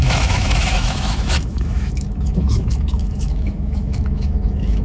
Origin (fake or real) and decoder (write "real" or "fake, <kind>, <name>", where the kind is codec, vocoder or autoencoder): fake, autoencoder, DAC-VAE